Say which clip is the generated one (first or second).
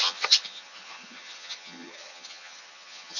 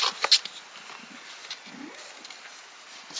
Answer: first